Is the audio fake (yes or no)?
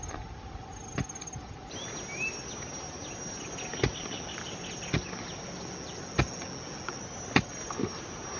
no